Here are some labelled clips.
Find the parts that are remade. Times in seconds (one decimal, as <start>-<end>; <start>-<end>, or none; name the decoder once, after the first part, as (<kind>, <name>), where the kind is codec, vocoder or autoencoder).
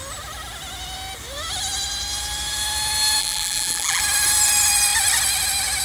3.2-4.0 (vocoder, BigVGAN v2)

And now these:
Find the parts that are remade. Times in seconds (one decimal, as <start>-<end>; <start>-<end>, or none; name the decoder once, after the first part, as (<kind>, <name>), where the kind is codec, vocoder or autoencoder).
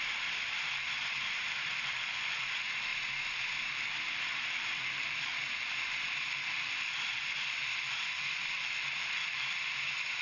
0.0-0.8 (vocoder, BigVGAN v2); 1.3-2.9; 3.7-5.3; 6.3-10.2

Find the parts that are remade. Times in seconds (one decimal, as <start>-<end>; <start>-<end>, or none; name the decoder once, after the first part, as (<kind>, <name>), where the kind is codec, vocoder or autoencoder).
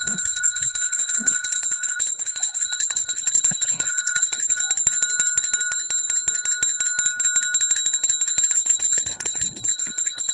0.0-4.6 (codec, HILCodec); 8.5-10.3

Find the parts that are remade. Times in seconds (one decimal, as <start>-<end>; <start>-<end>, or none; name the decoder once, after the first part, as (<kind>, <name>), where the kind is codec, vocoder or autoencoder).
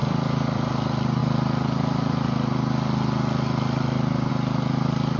0.0-0.7 (vocoder, BigVGAN v2)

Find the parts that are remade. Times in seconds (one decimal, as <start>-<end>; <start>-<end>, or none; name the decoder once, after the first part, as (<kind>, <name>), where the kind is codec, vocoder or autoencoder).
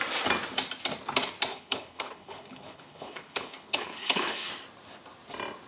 1.5-4.5 (codec, HILCodec)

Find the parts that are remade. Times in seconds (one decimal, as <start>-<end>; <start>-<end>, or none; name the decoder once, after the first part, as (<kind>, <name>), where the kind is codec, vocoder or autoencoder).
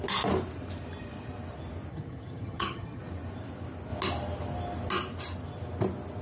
1.9-3.0 (vocoder, HiFi-GAN)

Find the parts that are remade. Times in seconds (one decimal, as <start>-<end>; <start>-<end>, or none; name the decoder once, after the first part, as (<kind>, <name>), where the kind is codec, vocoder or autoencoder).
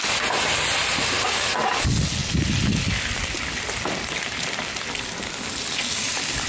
none